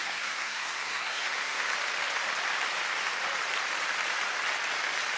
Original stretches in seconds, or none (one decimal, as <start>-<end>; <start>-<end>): 1.7-5.2